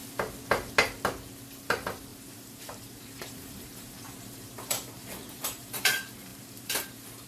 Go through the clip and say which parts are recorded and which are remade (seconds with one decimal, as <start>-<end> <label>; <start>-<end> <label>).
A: 0.0-1.6 recorded; 1.6-7.3 remade

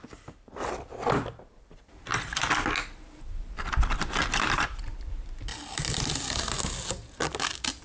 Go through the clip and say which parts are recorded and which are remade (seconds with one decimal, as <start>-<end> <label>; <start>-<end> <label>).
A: 0.0-0.6 remade; 0.6-1.1 recorded; 1.1-2.1 remade; 2.1-3.3 recorded; 3.3-5.5 remade; 5.5-7.2 recorded; 7.2-7.8 remade